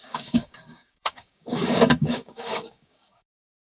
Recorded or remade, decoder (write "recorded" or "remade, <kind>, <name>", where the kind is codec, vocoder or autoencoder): remade, codec, DAC